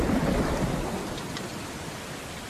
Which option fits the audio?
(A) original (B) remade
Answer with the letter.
B